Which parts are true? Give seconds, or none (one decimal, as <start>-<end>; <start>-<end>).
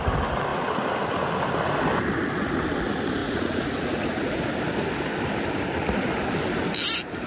0.0-3.2; 4.3-7.3